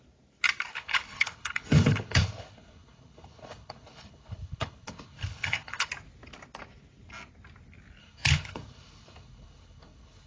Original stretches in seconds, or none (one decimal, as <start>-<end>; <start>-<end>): 0.0-0.7; 5.9-8.0